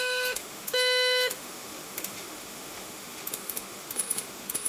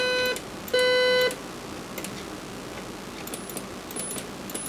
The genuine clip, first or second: second